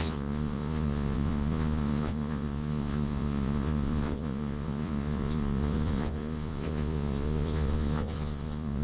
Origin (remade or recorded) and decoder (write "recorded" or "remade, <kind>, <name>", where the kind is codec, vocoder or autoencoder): remade, vocoder, Vocos